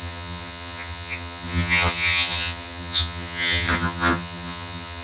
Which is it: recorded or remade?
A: remade